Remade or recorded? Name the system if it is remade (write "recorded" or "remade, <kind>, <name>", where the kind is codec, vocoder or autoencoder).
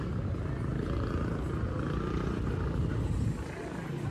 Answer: recorded